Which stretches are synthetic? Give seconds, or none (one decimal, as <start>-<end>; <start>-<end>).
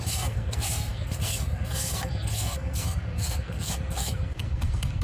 0.0-5.0